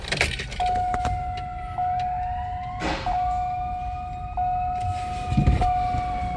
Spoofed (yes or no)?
no